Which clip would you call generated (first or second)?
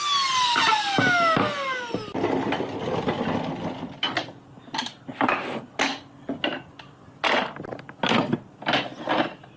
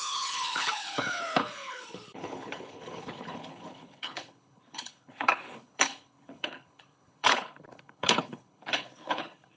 second